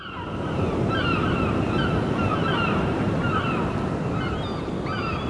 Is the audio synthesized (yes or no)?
no